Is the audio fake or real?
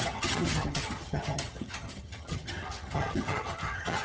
fake